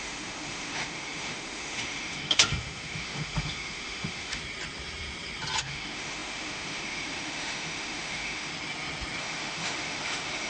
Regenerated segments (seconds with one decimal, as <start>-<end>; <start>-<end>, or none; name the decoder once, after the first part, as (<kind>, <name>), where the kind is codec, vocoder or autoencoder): 0.0-4.4 (autoencoder, DAC-VAE); 5.6-8.5; 9.2-10.5